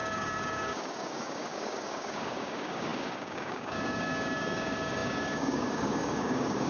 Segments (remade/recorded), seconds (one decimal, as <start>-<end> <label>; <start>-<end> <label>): 0.0-6.7 remade